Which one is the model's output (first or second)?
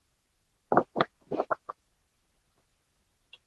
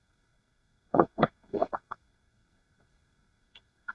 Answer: second